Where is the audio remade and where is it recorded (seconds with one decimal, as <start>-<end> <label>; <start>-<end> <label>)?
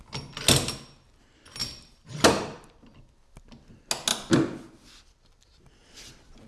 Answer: 0.0-1.6 recorded; 1.6-3.1 remade; 3.1-6.5 recorded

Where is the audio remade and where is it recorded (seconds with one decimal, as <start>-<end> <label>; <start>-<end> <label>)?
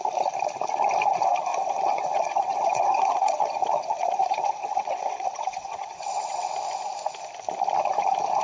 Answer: 0.0-1.5 recorded; 1.5-6.5 remade; 6.5-8.4 recorded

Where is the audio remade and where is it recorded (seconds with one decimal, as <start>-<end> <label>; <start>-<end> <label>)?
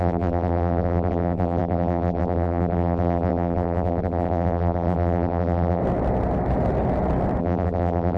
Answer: 0.0-5.8 remade; 5.8-7.4 recorded; 7.4-8.2 remade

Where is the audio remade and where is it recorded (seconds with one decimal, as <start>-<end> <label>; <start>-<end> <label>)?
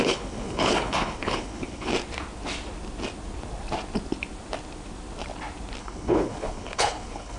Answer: 0.0-1.9 remade; 1.9-5.8 recorded; 5.8-7.4 remade